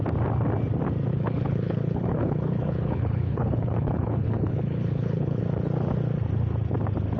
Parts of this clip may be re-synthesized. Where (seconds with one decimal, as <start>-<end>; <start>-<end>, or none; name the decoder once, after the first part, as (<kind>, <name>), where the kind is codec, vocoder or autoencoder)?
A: 1.1-5.4 (codec, HILCodec)